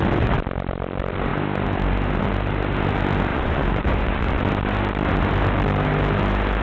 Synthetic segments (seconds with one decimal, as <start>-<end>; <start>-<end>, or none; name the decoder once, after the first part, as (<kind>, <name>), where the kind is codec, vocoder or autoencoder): 3.3-4.4 (vocoder, Vocos)